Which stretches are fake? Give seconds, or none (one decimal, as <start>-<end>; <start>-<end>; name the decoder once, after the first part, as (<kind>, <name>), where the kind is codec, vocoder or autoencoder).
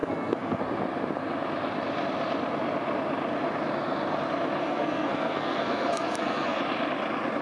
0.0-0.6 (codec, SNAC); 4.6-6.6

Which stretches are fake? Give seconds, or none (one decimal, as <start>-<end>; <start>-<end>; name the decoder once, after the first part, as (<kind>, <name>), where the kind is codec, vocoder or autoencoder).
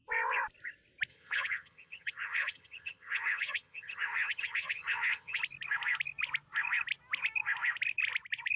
1.1-5.4 (vocoder, HiFi-GAN)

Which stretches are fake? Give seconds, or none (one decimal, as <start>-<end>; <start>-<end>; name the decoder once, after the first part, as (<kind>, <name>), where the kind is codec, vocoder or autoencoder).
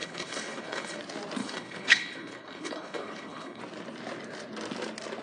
0.0-1.0 (codec, HILCodec); 1.4-3.6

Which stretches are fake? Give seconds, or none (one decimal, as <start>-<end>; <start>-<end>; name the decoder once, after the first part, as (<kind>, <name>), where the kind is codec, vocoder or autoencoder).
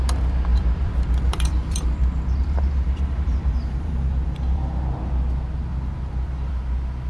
0.5-4.8 (vocoder, BigVGAN v2); 5.7-6.5